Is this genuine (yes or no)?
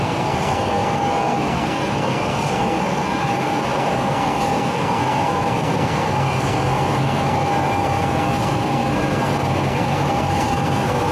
no